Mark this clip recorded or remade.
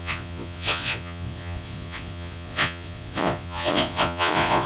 remade